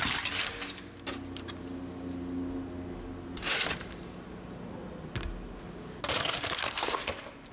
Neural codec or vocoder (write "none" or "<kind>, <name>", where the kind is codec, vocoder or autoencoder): none